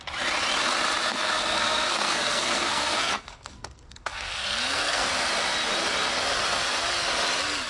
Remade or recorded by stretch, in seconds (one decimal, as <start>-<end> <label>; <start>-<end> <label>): 0.0-1.1 recorded; 1.1-5.1 remade; 5.1-7.7 recorded